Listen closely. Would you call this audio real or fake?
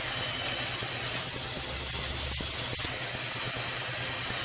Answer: real